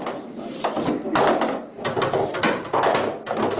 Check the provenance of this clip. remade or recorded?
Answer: recorded